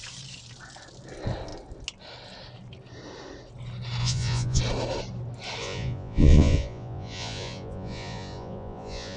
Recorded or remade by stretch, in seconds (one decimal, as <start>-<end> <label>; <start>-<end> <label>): 0.0-4.0 recorded; 4.0-4.6 remade; 4.6-5.6 recorded; 5.6-9.2 remade